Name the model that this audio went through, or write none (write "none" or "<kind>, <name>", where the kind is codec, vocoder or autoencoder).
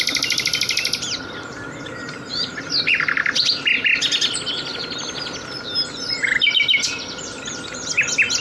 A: none